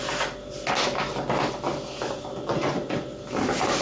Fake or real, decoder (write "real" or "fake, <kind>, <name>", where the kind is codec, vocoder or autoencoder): real